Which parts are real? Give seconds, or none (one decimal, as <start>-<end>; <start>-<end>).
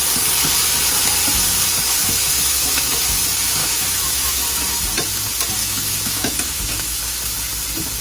0.0-2.0; 3.2-3.6; 4.4-5.6; 7.2-8.0